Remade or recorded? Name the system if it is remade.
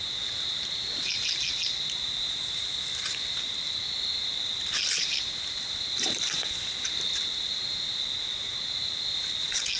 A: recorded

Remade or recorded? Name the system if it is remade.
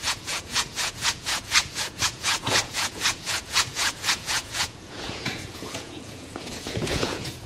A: remade, vocoder, Vocos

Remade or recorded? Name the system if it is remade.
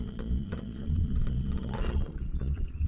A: remade, vocoder, Vocos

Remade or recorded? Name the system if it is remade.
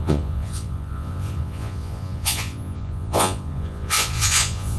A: remade, vocoder, Vocos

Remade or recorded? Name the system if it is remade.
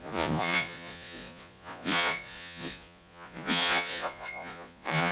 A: remade, vocoder, Vocos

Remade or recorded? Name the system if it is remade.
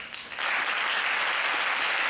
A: recorded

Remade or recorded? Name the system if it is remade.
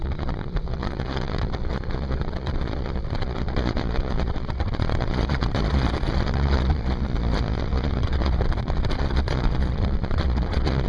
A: remade, vocoder, Vocos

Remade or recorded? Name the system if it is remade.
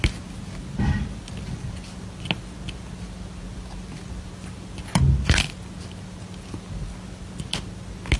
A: recorded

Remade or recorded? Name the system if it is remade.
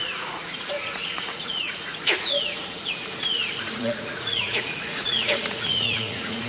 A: remade, vocoder, Vocos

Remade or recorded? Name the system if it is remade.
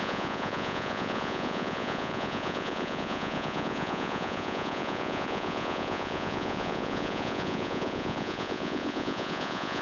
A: remade, vocoder, Vocos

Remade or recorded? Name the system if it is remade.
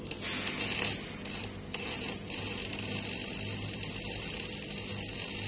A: recorded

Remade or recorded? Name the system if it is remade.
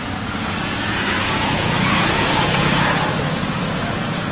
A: remade, vocoder, Vocos